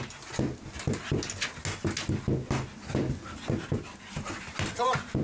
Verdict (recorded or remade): recorded